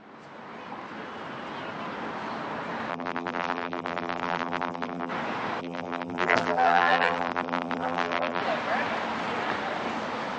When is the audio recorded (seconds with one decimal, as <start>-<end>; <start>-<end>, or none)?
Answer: 0.0-2.9; 5.1-5.6; 8.4-10.4

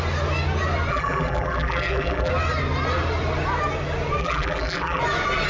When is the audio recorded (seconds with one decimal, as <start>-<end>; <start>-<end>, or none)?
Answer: 0.0-0.9; 2.3-4.2; 5.0-5.5